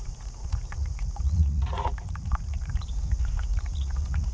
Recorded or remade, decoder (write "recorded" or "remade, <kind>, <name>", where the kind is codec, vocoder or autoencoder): remade, vocoder, Vocos